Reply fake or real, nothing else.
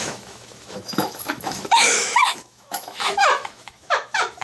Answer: fake